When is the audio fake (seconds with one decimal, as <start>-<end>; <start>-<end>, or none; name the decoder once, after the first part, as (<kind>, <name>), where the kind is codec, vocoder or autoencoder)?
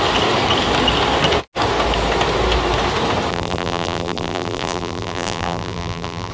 3.3-6.3 (vocoder, BigVGAN v2)